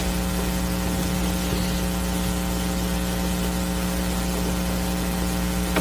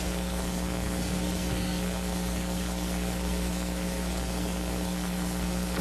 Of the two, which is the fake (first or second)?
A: second